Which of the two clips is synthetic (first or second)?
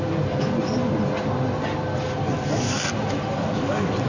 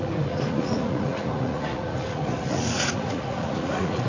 second